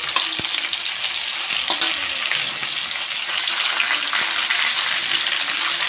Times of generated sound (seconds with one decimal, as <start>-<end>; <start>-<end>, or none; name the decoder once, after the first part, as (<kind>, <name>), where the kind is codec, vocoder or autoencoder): none